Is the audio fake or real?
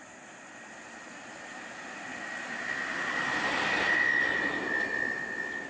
real